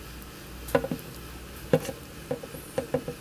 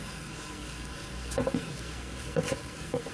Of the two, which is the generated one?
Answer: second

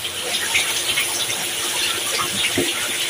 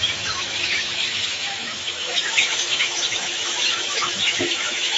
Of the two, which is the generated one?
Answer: second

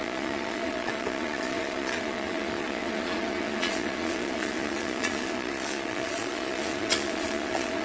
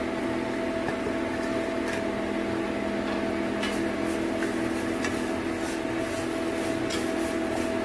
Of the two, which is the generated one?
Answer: first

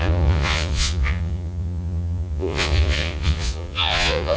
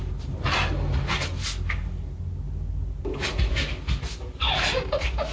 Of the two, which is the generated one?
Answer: first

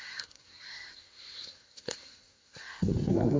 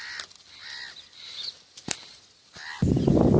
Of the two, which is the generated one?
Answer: first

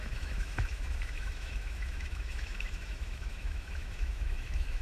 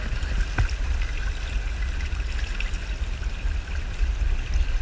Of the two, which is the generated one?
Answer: first